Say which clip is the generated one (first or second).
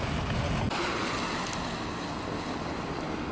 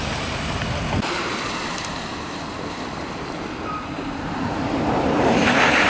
second